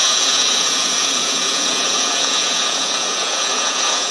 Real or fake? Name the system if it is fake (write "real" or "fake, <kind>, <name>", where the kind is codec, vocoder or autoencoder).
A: fake, vocoder, Vocos